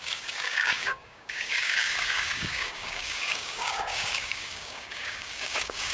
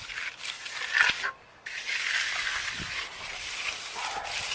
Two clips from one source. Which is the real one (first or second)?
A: second